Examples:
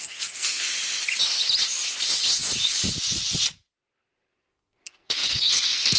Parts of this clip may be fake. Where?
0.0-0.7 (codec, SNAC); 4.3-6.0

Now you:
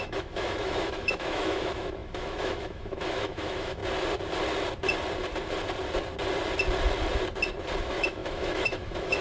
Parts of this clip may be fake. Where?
0.0-3.8 (autoencoder, DAC-VAE); 7.8-9.2

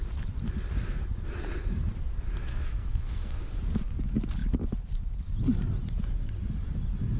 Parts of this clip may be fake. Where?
2.5-3.5 (codec, SNAC)

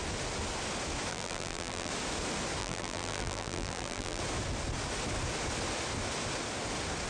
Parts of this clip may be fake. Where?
1.1-1.9 (vocoder, BigVGAN v2); 2.6-4.2

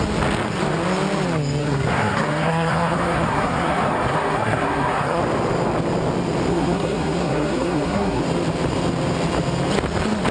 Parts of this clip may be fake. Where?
1.6-5.2 (codec, SNAC); 6.5-8.2

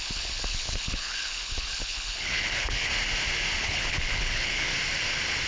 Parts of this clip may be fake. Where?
0.0-2.9 (codec, HILCodec); 3.6-4.7